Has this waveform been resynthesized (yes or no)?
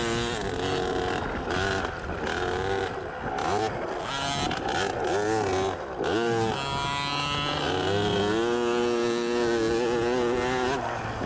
no